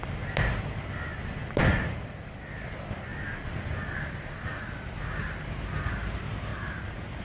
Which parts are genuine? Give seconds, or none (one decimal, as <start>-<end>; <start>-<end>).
0.0-1.4; 2.1-6.5